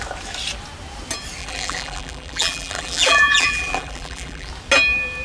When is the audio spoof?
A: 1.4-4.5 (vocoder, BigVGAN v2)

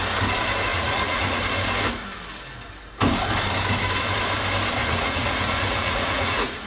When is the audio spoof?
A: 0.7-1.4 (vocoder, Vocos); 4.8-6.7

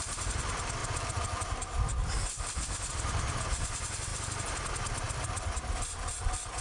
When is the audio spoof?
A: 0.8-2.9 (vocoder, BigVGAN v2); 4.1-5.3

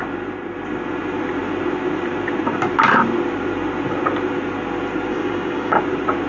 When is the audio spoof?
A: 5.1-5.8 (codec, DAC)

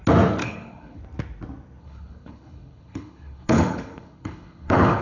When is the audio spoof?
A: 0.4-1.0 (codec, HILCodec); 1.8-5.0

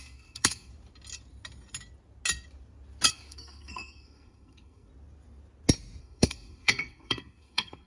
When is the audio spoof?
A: 0.0-0.7 (codec, SNAC); 3.1-4.9; 6.0-7.9

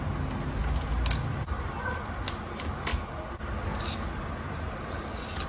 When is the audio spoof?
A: none